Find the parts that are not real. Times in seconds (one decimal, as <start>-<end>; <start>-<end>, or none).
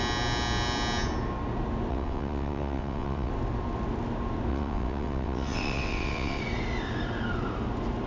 1.9-3.3; 4.5-6.4